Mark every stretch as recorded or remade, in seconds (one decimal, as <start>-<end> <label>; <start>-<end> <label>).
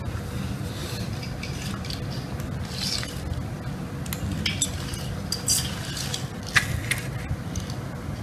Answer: 0.0-8.2 recorded